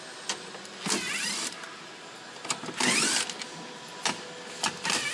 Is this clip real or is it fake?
real